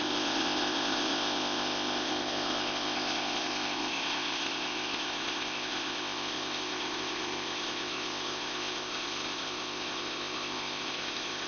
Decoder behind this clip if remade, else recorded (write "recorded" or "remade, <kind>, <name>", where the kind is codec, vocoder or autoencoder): remade, codec, ZipCodec